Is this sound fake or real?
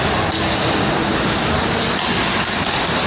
real